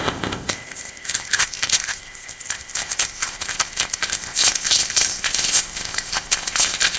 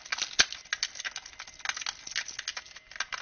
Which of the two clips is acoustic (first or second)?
second